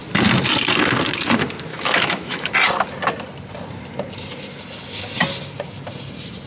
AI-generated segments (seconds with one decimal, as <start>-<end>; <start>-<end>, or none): 1.7-2.5